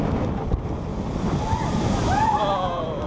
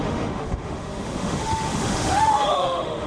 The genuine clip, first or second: first